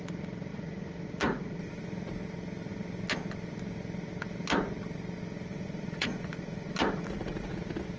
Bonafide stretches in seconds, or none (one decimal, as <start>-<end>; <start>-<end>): 0.0-0.5; 1.8-5.5; 7.6-8.0